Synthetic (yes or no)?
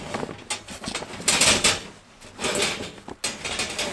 no